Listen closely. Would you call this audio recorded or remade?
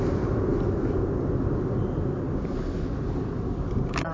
recorded